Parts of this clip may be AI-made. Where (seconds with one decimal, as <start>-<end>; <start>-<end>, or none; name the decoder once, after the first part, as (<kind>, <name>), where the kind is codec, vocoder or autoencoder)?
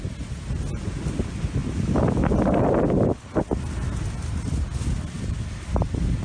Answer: none